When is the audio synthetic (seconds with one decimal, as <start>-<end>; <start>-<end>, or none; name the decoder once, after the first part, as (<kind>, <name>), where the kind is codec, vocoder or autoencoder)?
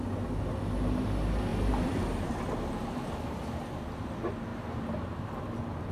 1.5-2.4 (vocoder, BigVGAN v2); 2.8-4.1; 4.5-5.4